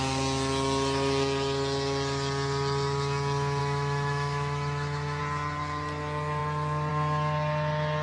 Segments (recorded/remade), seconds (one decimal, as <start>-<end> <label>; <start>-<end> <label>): 0.0-3.6 recorded; 3.6-5.2 remade; 5.2-8.0 recorded